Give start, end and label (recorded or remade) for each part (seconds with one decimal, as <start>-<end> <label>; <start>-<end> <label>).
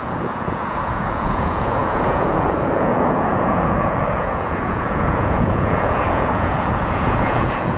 0.0-7.8 remade